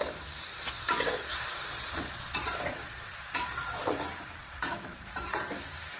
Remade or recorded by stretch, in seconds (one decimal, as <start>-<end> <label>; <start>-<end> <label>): 0.0-0.5 recorded; 0.5-4.0 remade; 4.0-4.4 recorded; 4.4-5.4 remade; 5.4-6.0 recorded